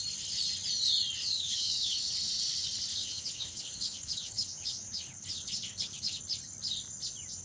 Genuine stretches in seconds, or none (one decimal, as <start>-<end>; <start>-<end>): 0.0-1.2; 2.3-2.9; 6.2-7.4

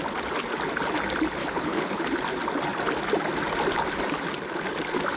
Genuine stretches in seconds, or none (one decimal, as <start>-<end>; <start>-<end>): 0.0-1.4; 2.0-5.2